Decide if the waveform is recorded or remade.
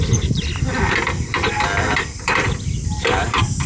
remade